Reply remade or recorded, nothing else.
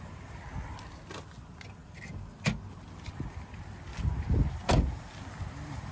recorded